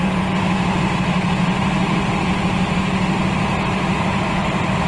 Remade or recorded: recorded